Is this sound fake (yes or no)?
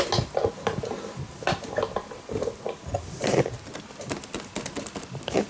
no